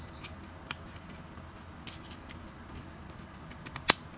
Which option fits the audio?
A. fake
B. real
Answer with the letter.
B